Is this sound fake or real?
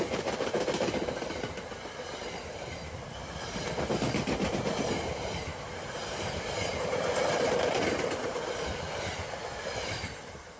real